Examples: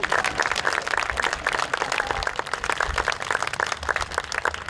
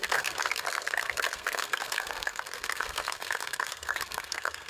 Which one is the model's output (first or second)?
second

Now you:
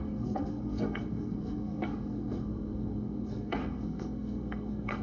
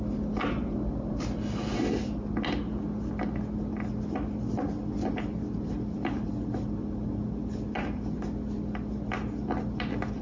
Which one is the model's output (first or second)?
first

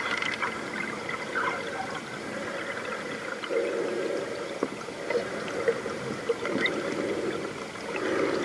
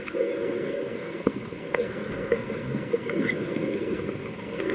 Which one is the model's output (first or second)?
second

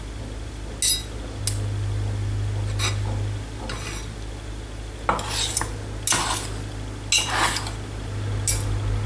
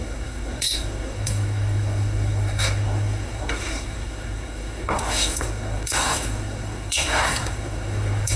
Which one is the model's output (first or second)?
second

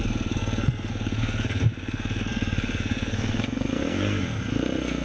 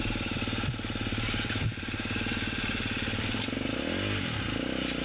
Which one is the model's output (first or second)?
first